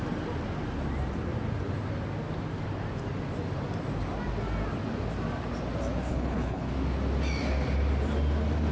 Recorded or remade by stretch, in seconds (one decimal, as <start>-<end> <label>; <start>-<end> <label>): 0.0-6.1 recorded; 6.1-6.7 remade; 6.7-8.7 recorded